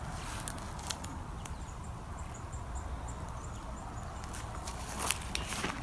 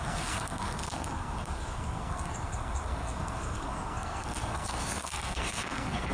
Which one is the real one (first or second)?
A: first